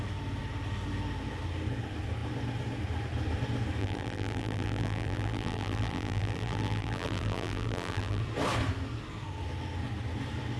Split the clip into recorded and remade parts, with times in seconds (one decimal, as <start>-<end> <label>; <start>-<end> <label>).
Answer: 0.0-3.8 recorded; 3.8-8.2 remade; 8.2-10.6 recorded